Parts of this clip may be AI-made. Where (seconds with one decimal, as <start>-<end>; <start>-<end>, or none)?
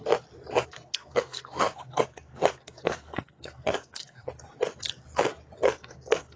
0.5-4.3; 5.6-6.4